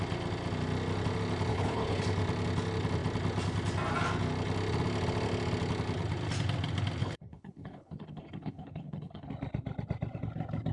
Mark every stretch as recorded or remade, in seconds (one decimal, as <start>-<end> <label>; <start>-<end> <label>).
0.0-1.5 recorded; 1.5-2.0 remade; 2.0-7.0 recorded; 7.0-9.3 remade; 9.3-10.7 recorded